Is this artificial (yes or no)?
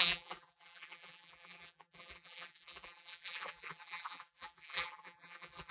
yes